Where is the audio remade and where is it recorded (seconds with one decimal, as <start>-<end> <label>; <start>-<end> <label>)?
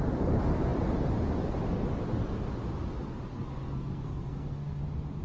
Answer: 0.0-3.3 recorded; 3.3-4.8 remade; 4.8-5.2 recorded